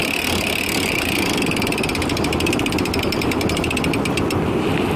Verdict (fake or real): real